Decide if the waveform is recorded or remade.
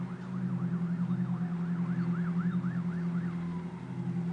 recorded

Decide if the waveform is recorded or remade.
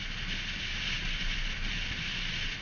recorded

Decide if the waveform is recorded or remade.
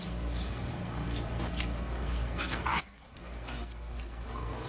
remade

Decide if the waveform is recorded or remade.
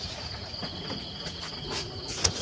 remade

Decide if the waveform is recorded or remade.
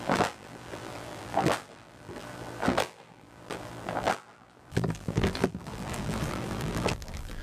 remade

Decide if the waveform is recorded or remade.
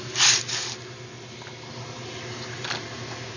recorded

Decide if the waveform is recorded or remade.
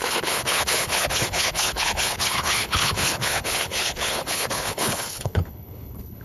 remade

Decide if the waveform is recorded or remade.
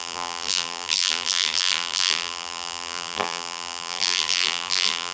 remade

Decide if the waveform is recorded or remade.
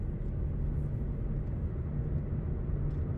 recorded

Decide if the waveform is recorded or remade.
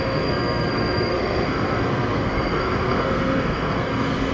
remade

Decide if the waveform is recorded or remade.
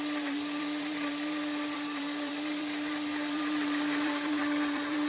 remade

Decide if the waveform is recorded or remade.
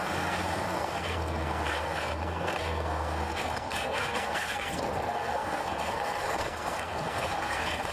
remade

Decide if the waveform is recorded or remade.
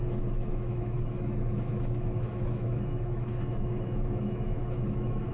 remade